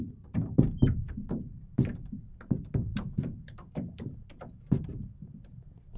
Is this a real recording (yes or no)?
no